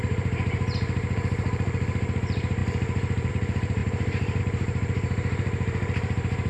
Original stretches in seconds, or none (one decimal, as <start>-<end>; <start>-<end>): none